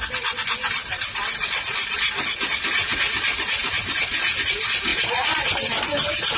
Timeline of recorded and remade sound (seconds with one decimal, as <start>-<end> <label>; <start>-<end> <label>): 0.0-0.8 recorded; 0.8-1.9 remade; 1.9-2.9 recorded; 2.9-3.8 remade; 3.8-4.9 recorded; 4.9-5.4 remade; 5.4-6.4 recorded